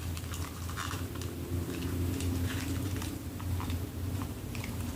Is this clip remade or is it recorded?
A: remade